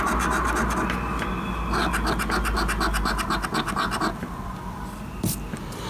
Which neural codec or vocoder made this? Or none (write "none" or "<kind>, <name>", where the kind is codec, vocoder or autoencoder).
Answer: none